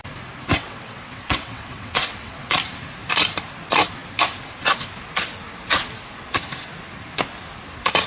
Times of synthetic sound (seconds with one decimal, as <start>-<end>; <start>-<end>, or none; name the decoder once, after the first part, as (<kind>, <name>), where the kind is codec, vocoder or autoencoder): 0.6-2.5 (vocoder, WaveNeXt)